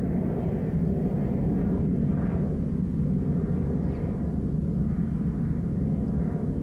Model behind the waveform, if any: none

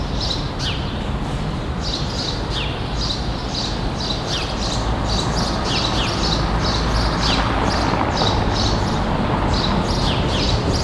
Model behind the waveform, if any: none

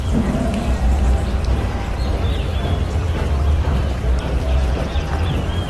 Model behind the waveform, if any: vocoder, BigVGAN v2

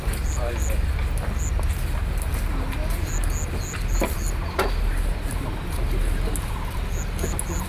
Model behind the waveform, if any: none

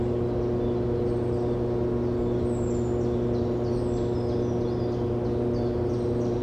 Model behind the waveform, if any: none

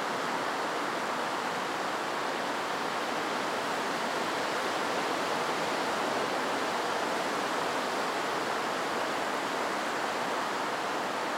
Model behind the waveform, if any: none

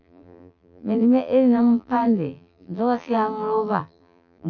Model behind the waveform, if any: vocoder, BigVGAN v2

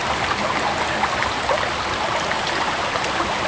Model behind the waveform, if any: none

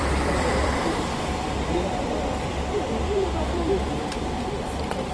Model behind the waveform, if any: vocoder, BigVGAN v2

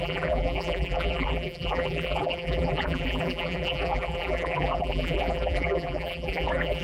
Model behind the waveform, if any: vocoder, BigVGAN v2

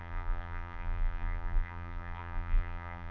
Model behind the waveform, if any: vocoder, BigVGAN v2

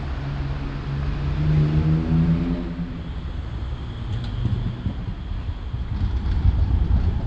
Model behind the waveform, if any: none